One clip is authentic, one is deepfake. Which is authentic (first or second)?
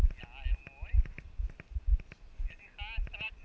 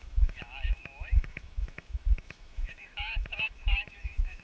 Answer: first